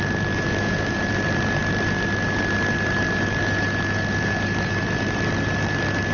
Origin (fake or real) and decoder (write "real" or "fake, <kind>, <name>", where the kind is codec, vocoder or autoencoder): real